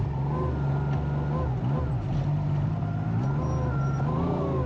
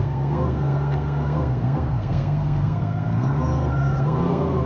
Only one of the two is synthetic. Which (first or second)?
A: second